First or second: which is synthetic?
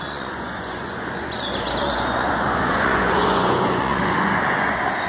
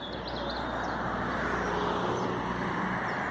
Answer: first